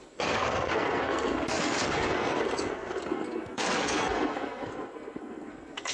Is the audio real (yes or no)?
no